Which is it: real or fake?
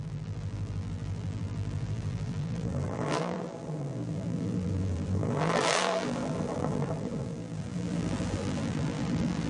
fake